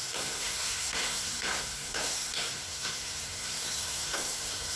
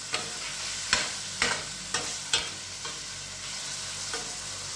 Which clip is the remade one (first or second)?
first